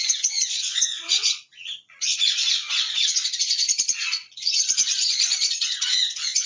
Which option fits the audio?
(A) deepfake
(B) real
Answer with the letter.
A